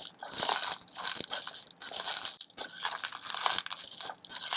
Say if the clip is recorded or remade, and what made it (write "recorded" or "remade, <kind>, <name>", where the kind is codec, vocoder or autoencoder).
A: recorded